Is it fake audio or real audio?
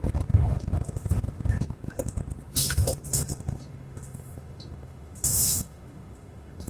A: fake